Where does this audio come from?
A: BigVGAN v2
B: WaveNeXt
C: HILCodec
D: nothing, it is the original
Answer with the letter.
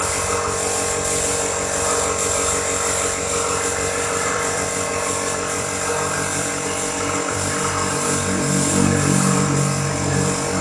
A